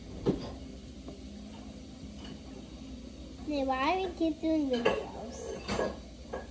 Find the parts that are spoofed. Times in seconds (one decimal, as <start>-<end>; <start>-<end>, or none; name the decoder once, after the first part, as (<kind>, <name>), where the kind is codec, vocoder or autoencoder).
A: 5.0-5.6 (vocoder, BigVGAN v2)